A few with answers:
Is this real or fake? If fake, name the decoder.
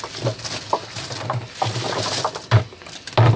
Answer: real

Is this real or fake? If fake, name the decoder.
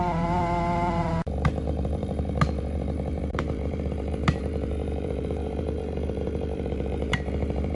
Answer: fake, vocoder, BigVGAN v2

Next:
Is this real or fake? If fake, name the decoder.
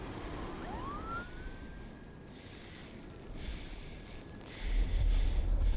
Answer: fake, vocoder, BigVGAN v2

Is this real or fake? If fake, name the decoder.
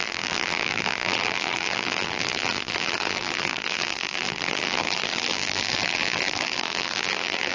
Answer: fake, vocoder, BigVGAN v2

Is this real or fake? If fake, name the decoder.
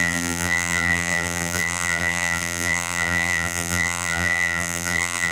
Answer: fake, vocoder, BigVGAN v2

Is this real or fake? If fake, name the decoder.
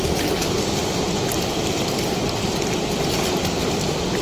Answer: real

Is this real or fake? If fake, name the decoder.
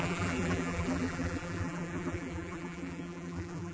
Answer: fake, vocoder, BigVGAN v2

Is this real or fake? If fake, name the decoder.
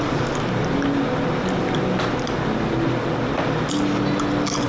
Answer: real